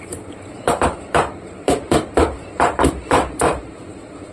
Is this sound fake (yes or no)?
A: yes